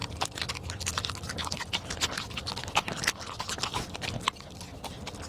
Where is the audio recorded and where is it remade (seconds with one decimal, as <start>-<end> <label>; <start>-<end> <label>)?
0.0-5.3 recorded